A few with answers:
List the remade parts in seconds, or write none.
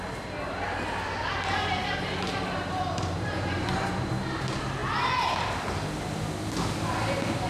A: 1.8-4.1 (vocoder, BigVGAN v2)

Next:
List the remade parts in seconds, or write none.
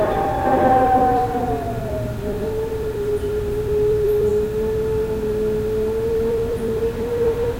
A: 0.0-4.3 (vocoder, BigVGAN v2); 6.1-7.6